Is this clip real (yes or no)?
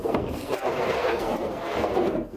no